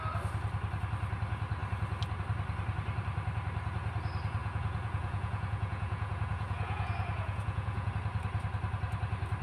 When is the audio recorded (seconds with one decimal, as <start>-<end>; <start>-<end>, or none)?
0.0-4.4; 7.9-9.4